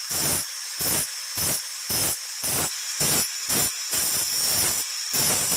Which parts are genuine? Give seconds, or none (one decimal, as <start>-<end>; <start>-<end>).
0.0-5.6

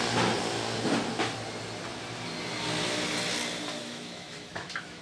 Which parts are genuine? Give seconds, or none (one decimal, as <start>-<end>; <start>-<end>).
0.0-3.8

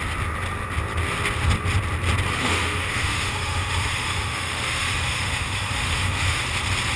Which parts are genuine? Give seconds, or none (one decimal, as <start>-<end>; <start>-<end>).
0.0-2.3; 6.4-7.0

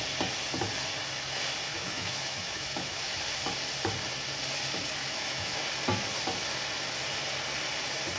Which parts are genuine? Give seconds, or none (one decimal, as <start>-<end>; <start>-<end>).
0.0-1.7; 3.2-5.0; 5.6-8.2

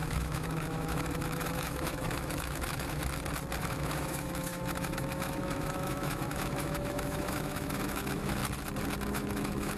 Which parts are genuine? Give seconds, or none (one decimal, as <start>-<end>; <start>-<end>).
3.0-3.6; 8.4-9.1